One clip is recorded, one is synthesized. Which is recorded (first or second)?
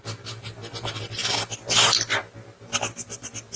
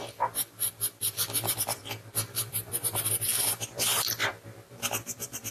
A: first